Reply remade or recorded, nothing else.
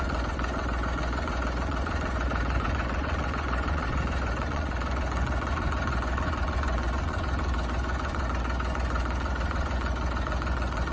remade